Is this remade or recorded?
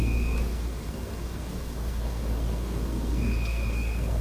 remade